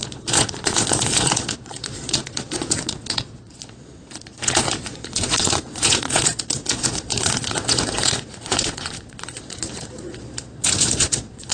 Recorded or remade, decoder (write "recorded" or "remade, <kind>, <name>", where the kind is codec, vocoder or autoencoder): remade, vocoder, Vocos